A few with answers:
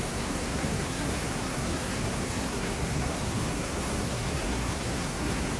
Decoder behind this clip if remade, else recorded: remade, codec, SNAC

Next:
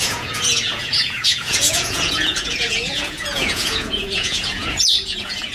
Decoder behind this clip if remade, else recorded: remade, vocoder, Vocos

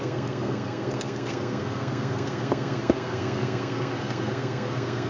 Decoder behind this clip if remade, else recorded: remade, codec, SNAC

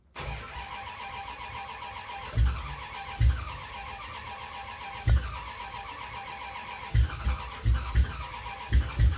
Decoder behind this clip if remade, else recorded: recorded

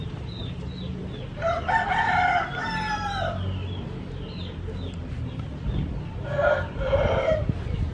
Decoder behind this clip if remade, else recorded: remade, vocoder, BigVGAN v2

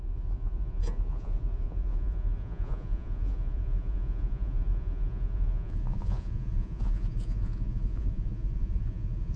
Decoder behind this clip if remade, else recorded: remade, vocoder, Vocos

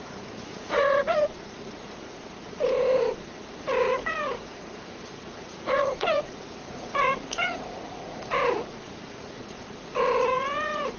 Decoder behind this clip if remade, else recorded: remade, vocoder, Vocos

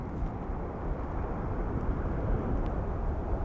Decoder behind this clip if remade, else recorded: recorded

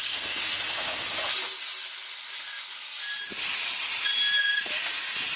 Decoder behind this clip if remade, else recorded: recorded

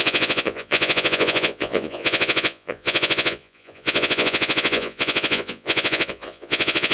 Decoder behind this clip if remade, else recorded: remade, vocoder, Vocos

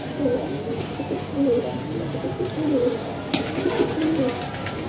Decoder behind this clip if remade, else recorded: recorded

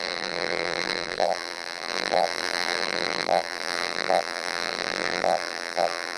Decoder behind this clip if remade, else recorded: remade, vocoder, BigVGAN v2